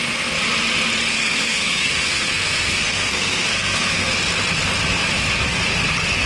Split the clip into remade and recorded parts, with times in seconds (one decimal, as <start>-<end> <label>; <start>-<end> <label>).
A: 0.0-1.1 recorded; 1.1-4.1 remade; 4.1-6.3 recorded